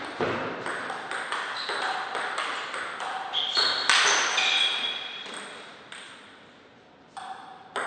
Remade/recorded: recorded